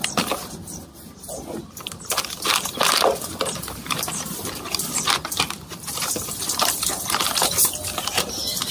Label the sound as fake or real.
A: real